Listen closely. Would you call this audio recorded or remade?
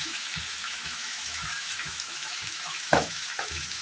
remade